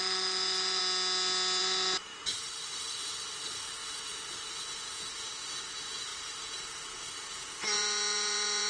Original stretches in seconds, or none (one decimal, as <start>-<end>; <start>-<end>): 0.8-1.6; 2.1-4.5